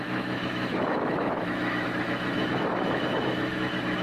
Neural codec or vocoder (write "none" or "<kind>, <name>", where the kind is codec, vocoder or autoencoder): autoencoder, DAC-VAE